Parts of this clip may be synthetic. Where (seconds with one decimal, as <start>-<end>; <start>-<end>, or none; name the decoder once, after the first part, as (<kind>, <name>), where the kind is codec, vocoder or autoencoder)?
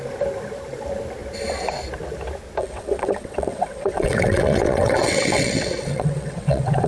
2.6-6.9 (vocoder, WaveNeXt)